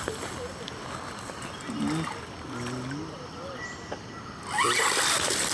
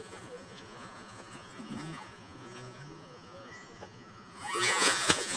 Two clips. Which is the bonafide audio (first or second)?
first